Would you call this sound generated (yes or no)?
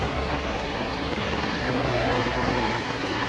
yes